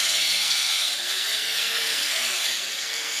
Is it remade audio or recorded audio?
remade